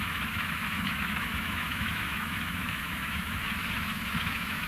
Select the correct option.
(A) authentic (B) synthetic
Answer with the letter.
B